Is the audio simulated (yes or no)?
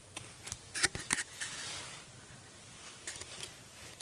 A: no